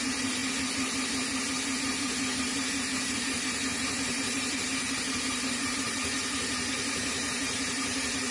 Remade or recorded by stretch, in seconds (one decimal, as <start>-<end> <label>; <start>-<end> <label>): 0.0-0.4 remade; 0.4-1.8 recorded; 1.8-8.3 remade